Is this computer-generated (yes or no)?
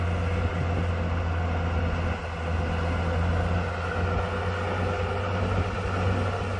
no